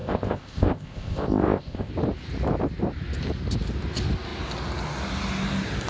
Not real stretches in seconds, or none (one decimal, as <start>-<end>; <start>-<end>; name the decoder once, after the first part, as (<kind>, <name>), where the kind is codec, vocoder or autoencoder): 0.0-1.9 (codec, ZipCodec)